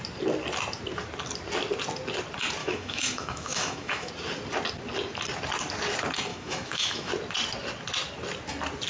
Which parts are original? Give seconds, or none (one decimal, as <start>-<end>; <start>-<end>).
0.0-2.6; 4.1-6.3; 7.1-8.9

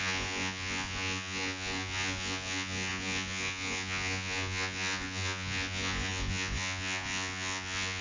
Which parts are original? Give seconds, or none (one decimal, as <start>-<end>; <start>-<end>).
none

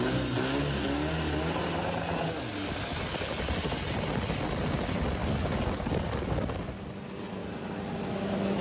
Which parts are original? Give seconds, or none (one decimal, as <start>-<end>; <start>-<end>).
0.0-5.2; 5.8-8.6

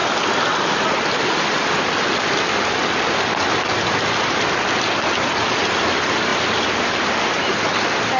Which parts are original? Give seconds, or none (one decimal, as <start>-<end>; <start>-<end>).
0.0-3.8; 6.3-6.8

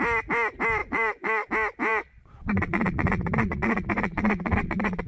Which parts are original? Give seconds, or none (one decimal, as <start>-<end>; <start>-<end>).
0.0-0.8; 1.5-1.9

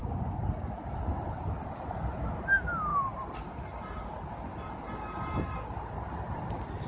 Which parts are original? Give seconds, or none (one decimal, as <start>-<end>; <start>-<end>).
0.0-6.9

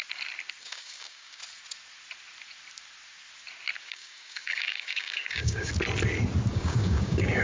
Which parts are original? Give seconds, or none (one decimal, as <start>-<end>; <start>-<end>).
0.0-0.6; 1.4-3.8; 5.7-6.5